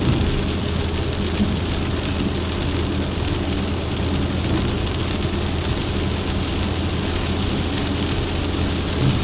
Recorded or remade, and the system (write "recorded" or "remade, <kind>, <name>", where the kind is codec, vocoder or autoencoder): recorded